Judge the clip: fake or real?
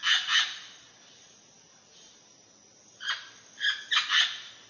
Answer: real